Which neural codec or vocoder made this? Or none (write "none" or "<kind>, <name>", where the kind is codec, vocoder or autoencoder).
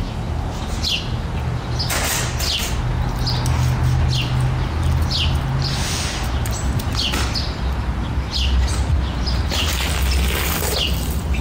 none